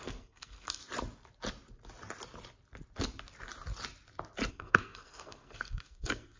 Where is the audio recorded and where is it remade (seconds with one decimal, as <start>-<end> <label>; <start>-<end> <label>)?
0.0-0.8 remade; 0.8-4.5 recorded; 4.5-6.4 remade